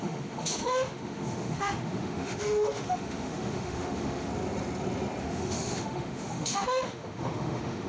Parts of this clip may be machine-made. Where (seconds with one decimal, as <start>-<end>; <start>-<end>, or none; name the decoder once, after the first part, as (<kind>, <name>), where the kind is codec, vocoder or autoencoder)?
0.0-4.3 (autoencoder, DAC-VAE); 5.2-7.9